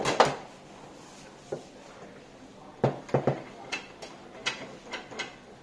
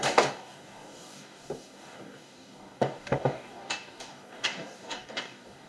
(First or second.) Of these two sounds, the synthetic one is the second